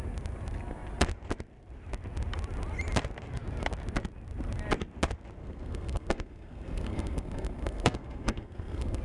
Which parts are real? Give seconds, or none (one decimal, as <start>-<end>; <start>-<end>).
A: 0.0-5.4

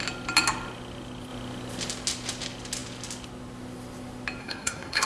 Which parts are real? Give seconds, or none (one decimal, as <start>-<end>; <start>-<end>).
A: 0.0-4.4

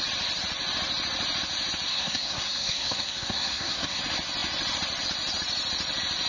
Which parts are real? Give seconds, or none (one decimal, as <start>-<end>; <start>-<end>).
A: 0.0-1.9; 4.0-6.3

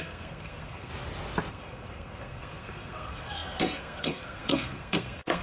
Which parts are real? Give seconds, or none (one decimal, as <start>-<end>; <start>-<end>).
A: 0.9-1.5